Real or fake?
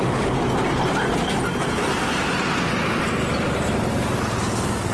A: real